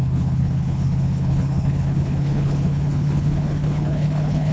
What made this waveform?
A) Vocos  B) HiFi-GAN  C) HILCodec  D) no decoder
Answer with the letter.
C